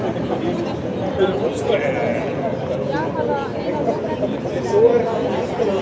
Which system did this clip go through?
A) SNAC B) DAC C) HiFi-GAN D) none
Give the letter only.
D